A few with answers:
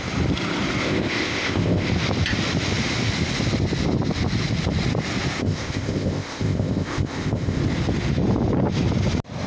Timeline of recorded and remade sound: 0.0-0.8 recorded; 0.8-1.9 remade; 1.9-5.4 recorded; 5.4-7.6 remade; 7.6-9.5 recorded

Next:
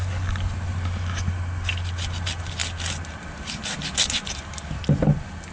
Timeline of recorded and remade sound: 0.0-5.5 recorded

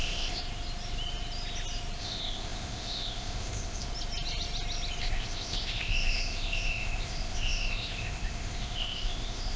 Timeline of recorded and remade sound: 0.0-0.4 remade; 0.4-2.0 recorded; 2.0-3.9 remade; 3.9-5.0 recorded; 5.0-9.6 remade

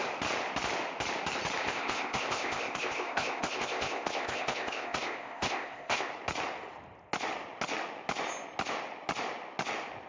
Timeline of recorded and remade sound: 0.0-1.6 recorded; 1.6-6.1 remade; 6.1-10.1 recorded

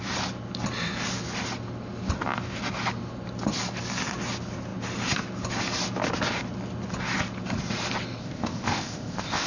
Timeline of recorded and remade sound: 0.0-8.2 recorded; 8.2-9.5 remade

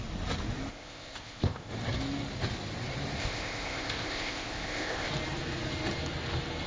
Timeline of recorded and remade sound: 0.0-0.7 recorded; 0.7-1.7 remade; 1.7-3.2 recorded; 3.2-5.1 remade; 5.1-6.7 recorded